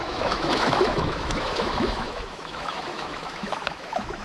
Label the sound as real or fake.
fake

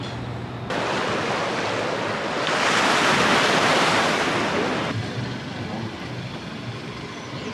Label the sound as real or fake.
real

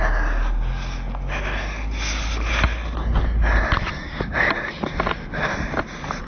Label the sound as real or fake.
real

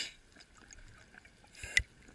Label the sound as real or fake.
real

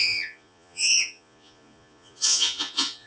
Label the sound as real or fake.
fake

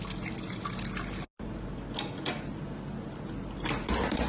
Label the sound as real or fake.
real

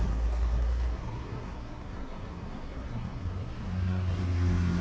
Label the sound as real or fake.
fake